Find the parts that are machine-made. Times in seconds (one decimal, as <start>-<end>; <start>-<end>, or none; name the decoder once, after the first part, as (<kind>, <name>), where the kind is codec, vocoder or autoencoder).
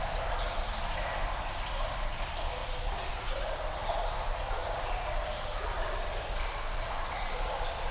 none